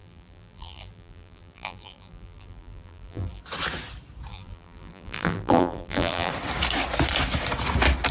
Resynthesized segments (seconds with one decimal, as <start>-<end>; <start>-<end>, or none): 0.0-3.4; 4.3-6.3

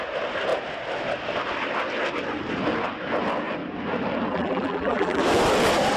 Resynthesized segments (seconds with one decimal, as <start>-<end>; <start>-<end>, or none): 4.3-5.2

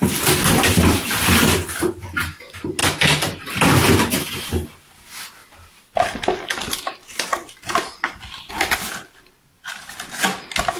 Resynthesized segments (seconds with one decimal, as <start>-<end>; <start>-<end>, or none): none

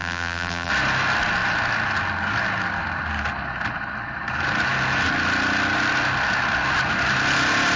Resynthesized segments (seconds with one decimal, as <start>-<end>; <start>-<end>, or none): 0.0-0.7